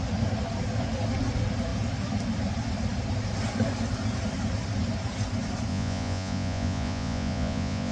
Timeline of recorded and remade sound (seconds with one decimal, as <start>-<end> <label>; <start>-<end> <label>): 0.0-5.7 recorded; 5.7-7.9 remade